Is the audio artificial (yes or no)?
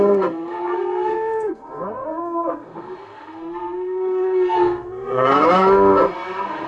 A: yes